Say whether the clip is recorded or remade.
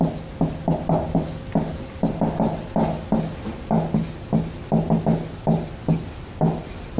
recorded